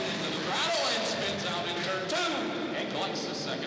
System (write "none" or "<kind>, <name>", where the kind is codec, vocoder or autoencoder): none